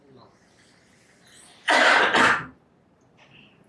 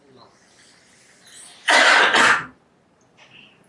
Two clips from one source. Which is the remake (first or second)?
first